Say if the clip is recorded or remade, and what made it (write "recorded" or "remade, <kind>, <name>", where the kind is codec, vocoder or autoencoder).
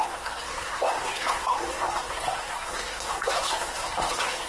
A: remade, codec, SNAC